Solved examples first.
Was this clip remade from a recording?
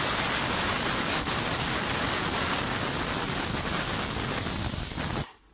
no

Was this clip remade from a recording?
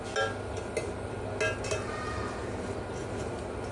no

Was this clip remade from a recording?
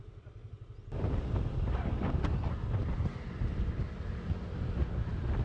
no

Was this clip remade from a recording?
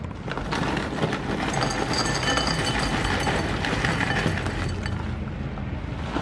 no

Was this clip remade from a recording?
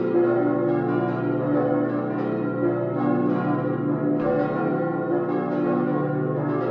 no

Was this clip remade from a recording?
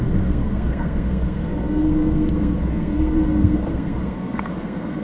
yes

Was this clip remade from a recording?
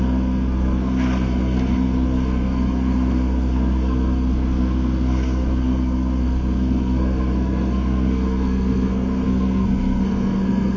yes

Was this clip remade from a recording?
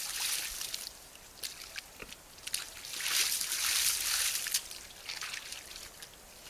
no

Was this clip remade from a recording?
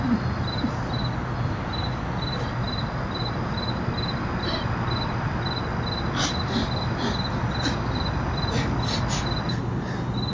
no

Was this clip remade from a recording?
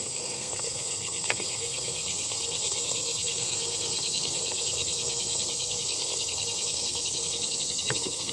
yes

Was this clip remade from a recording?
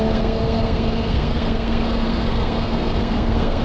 yes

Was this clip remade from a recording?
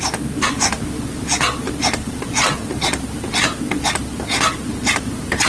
no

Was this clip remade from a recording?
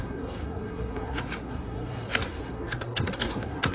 yes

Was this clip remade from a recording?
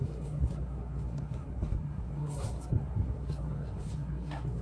yes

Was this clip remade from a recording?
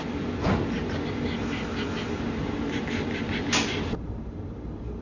no